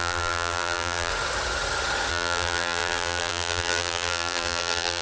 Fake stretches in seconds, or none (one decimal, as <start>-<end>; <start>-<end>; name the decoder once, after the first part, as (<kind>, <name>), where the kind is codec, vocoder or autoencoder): 0.0-1.1 (vocoder, BigVGAN v2); 2.1-5.0